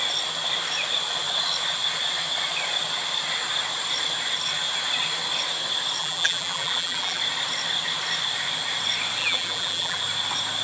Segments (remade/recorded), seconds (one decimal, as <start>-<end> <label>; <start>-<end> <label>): 0.0-6.0 recorded; 6.0-7.2 remade; 7.2-9.2 recorded; 9.2-10.0 remade; 10.0-10.6 recorded